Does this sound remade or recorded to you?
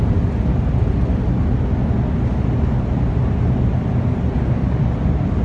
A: recorded